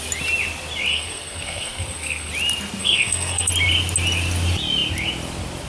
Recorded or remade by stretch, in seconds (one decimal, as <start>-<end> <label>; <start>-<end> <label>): 0.0-0.9 recorded; 0.9-2.3 remade; 2.3-2.8 recorded; 2.8-3.5 remade; 3.5-5.7 recorded